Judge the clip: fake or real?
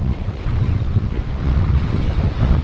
fake